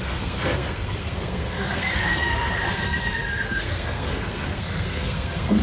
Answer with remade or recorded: remade